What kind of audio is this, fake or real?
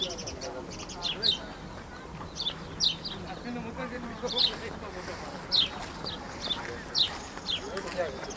real